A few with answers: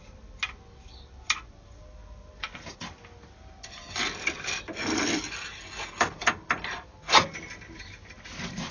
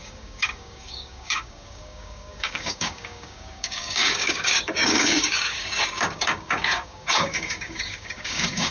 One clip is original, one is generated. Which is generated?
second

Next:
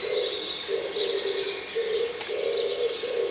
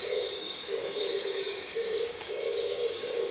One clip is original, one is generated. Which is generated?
second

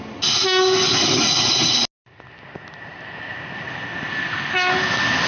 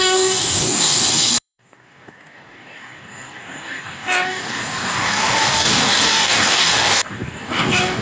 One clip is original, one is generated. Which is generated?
second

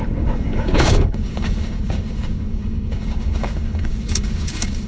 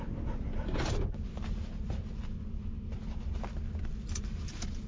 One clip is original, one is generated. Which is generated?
first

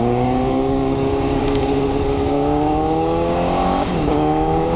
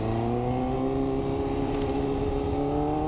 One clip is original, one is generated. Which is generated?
first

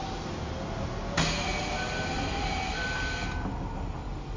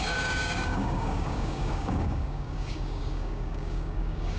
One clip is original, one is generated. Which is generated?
second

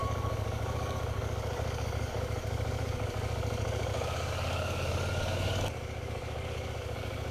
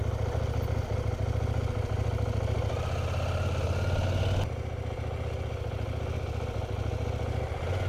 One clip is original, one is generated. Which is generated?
first